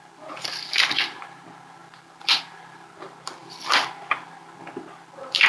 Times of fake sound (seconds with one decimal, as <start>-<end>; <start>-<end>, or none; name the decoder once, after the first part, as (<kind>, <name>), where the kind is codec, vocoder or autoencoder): none